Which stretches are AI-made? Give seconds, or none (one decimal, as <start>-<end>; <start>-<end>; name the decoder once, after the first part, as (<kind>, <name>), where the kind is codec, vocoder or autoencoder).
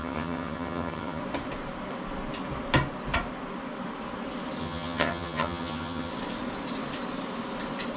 0.0-1.2 (vocoder, HiFi-GAN); 4.6-6.1